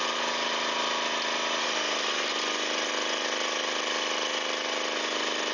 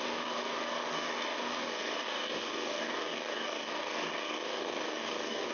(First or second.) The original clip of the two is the first